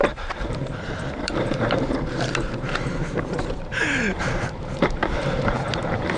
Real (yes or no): no